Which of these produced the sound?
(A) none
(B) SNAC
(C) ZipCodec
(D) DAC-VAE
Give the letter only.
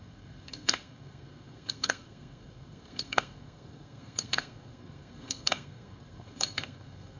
B